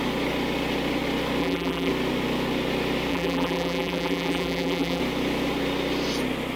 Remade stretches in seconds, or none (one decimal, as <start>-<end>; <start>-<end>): 1.4-1.9; 3.1-5.0